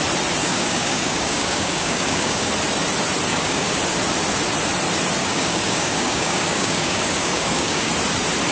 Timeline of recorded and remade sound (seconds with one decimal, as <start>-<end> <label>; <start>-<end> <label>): 0.0-0.4 recorded; 0.4-2.5 remade; 2.5-3.3 recorded; 3.3-3.8 remade; 3.8-5.2 recorded; 5.2-7.9 remade; 7.9-8.5 recorded